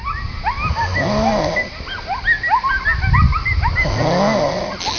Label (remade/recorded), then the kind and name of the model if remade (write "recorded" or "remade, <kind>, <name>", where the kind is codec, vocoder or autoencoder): recorded